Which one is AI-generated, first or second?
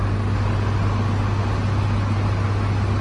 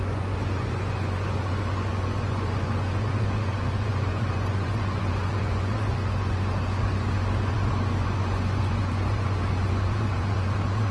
second